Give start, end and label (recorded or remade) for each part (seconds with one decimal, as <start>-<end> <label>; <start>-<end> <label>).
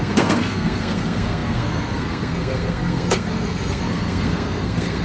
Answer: 0.0-5.0 remade